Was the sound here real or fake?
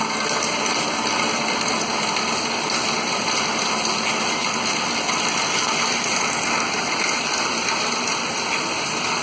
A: fake